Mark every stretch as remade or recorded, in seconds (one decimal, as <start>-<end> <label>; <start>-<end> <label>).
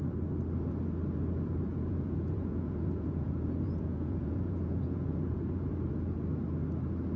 0.0-1.7 recorded; 1.7-5.7 remade; 5.7-7.2 recorded